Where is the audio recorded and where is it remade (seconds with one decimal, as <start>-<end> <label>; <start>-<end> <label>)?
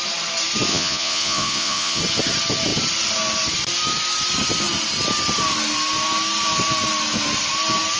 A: 0.0-0.7 recorded; 0.7-2.0 remade; 2.0-8.0 recorded